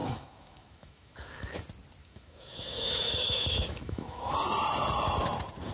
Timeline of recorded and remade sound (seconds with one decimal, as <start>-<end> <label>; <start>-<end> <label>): 0.0-1.6 remade; 1.6-2.0 recorded; 2.0-4.3 remade; 4.3-5.7 recorded